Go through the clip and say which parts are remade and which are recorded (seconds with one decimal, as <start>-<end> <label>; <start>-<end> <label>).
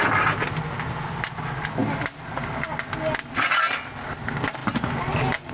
0.0-5.5 recorded